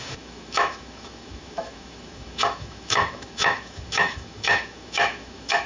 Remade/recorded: remade